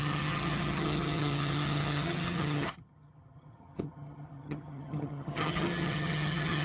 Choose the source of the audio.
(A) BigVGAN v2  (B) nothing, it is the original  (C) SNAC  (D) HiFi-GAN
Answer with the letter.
D